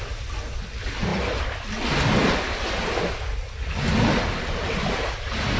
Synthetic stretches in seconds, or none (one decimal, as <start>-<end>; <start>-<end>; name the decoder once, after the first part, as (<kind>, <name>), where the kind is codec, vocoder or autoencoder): none